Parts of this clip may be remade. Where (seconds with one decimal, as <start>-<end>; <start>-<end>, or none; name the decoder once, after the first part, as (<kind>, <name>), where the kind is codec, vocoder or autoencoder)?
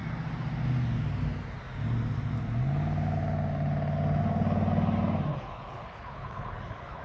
5.3-7.0 (codec, HILCodec)